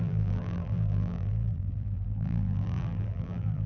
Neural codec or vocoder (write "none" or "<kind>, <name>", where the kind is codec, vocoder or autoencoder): vocoder, BigVGAN v2